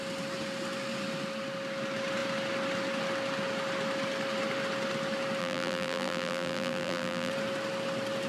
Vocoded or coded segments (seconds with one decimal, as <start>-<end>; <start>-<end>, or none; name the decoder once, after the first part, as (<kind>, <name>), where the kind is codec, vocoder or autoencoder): 5.4-7.3 (vocoder, BigVGAN v2)